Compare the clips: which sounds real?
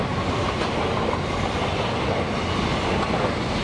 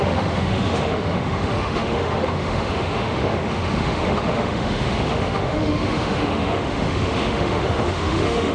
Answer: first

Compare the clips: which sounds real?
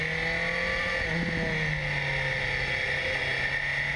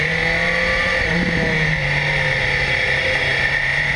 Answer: first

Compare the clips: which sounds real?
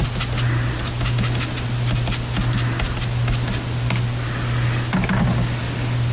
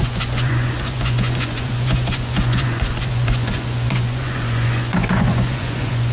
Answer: first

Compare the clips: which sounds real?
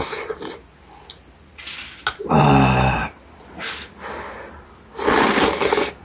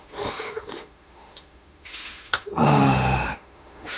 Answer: first